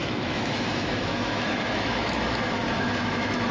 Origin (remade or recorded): remade